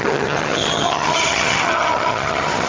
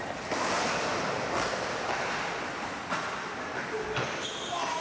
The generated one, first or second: first